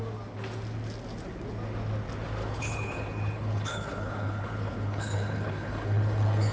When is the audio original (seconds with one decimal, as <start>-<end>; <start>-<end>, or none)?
0.0-2.4